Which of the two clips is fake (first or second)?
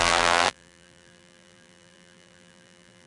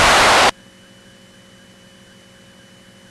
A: first